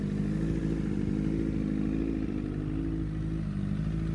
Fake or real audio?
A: real